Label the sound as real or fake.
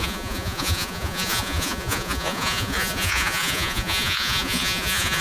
fake